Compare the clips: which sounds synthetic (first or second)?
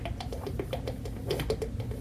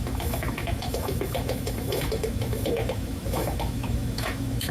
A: second